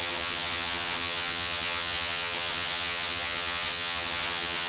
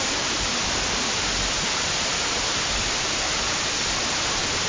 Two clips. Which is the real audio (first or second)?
second